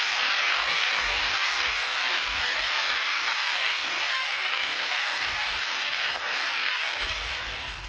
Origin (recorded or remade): remade